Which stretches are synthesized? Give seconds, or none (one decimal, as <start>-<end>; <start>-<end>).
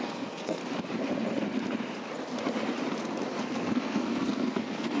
0.0-0.6; 3.4-5.0